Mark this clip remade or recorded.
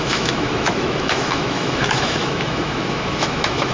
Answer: remade